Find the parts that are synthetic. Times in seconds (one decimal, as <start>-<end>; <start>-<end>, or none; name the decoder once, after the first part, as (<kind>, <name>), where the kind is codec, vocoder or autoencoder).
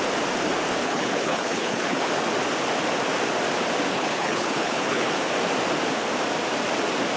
0.8-2.1 (codec, HILCodec); 3.9-5.1